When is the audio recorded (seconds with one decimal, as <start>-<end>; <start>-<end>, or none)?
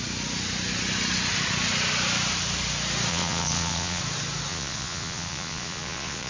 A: 0.0-3.1; 4.0-4.5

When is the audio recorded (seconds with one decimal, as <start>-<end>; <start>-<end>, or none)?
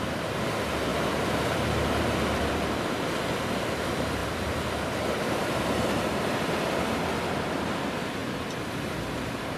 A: none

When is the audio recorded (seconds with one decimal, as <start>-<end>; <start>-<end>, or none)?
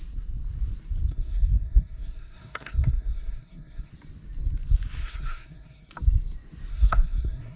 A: 0.0-1.1; 3.9-5.0; 5.9-6.7